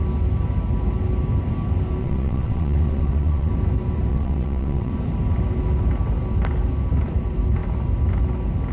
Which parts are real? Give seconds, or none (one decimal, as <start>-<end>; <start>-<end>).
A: 0.0-2.0; 3.5-4.1; 4.9-8.7